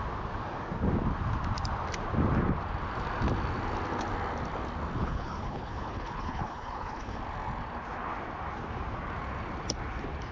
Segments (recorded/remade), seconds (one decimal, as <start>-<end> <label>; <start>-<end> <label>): 0.0-5.0 recorded; 5.0-7.2 remade; 7.2-10.3 recorded